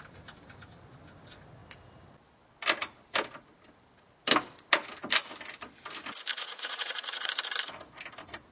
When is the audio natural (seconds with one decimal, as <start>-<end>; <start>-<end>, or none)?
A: 0.0-6.3; 7.3-8.5